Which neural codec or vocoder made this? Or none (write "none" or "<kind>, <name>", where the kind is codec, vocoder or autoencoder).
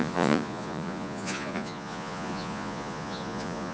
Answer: vocoder, Vocos